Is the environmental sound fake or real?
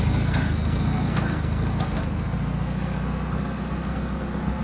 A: fake